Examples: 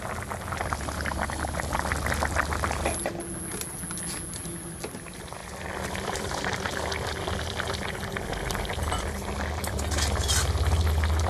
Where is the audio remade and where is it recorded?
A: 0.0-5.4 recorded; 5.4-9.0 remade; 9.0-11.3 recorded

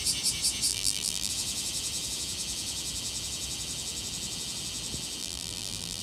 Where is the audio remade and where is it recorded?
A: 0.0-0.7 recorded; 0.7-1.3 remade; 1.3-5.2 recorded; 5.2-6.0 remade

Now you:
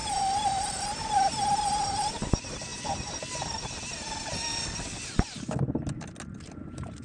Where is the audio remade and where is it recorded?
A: 0.0-2.7 remade; 2.7-6.6 recorded; 6.6-7.0 remade

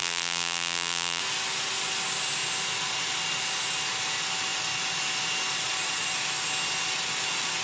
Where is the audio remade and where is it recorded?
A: 0.0-1.2 remade; 1.2-7.6 recorded

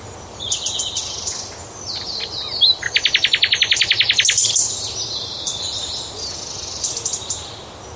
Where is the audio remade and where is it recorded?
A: 0.0-4.4 recorded; 4.4-5.6 remade; 5.6-8.0 recorded

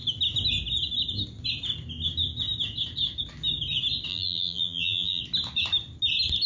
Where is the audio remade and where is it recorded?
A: 0.0-4.1 recorded; 4.1-5.2 remade; 5.2-6.5 recorded

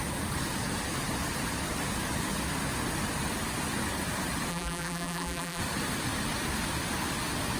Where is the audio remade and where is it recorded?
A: 0.0-4.5 recorded; 4.5-5.6 remade; 5.6-7.6 recorded

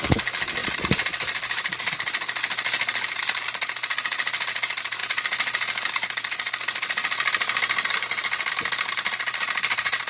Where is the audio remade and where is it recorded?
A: 0.0-0.6 recorded; 0.6-1.9 remade; 1.9-10.1 recorded